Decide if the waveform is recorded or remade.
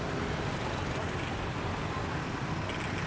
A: recorded